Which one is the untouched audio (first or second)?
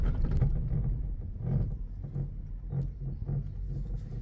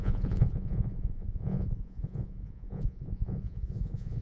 first